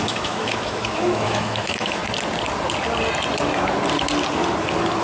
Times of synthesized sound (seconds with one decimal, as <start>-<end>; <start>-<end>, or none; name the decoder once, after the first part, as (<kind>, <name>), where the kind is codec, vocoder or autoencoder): 0.0-2.0 (autoencoder, DAC-VAE)